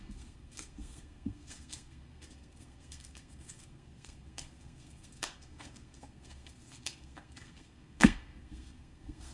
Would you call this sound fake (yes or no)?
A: yes